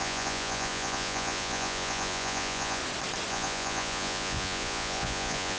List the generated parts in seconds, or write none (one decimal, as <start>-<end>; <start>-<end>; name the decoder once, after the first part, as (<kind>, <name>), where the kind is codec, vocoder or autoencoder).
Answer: 0.0-2.8 (vocoder, Vocos); 3.3-5.6